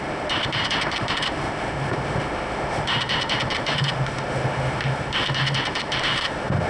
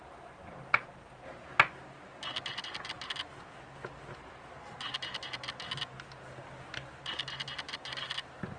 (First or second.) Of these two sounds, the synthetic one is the first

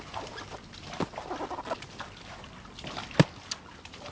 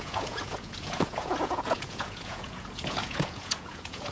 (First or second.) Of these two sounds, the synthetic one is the second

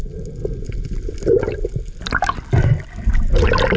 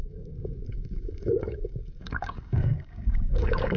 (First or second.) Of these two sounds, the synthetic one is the second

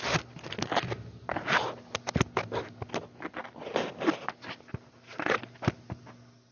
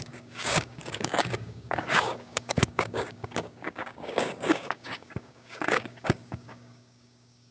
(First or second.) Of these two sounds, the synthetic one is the second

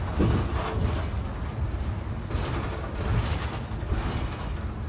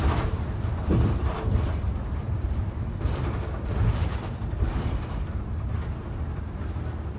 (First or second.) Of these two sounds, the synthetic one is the second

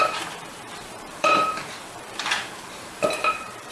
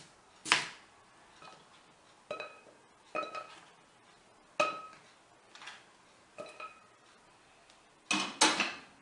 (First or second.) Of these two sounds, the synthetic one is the first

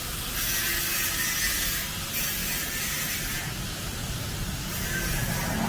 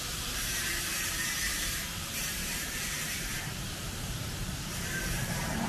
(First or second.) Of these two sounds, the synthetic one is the second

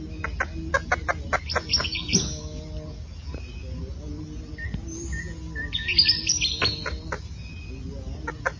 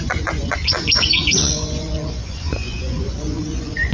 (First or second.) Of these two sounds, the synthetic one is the second